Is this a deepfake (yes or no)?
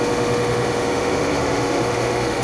yes